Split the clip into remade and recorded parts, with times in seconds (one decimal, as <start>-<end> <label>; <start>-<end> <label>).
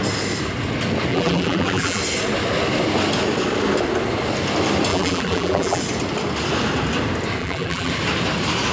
0.0-1.1 recorded; 1.1-2.0 remade; 2.0-4.9 recorded; 4.9-5.8 remade; 5.8-7.4 recorded; 7.4-7.9 remade; 7.9-8.7 recorded